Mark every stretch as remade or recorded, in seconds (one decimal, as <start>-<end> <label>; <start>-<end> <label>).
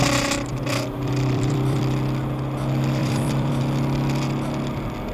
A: 0.0-0.5 recorded; 0.5-1.8 remade; 1.8-3.0 recorded; 3.0-3.6 remade; 3.6-5.1 recorded